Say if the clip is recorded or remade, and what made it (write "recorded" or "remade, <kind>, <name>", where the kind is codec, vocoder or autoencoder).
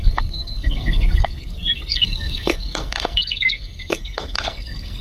remade, codec, SNAC